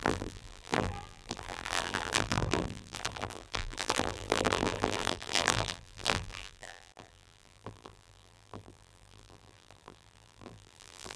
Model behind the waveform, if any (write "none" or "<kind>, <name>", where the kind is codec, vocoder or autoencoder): vocoder, BigVGAN v2